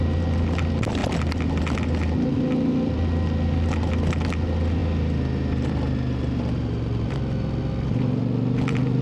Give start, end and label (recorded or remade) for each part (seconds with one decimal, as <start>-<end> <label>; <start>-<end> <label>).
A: 0.0-9.0 recorded